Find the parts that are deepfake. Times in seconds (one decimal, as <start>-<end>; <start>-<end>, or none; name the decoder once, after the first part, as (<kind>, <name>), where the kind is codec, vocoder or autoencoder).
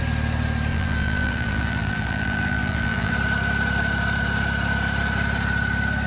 0.7-3.1 (vocoder, BigVGAN v2)